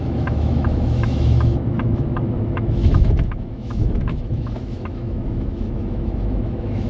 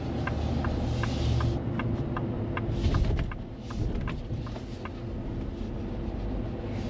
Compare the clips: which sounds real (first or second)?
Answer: second